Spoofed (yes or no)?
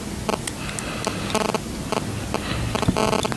no